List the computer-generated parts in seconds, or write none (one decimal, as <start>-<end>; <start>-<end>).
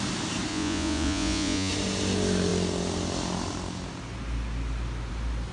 0.5-1.7